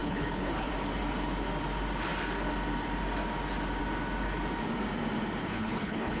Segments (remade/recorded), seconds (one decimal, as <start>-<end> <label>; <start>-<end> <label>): 0.0-0.7 remade; 0.7-5.4 recorded; 5.4-6.2 remade